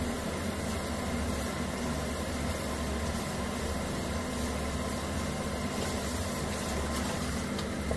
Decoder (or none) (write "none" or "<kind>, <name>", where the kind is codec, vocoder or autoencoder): none